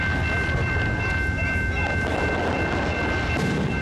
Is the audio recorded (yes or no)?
yes